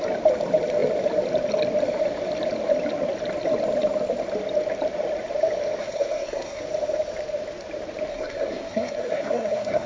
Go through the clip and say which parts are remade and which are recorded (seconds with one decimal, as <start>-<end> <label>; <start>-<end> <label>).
0.0-5.8 recorded; 5.8-6.6 remade; 6.6-8.1 recorded; 8.1-9.9 remade